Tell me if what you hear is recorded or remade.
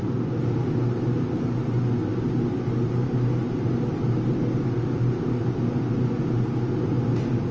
recorded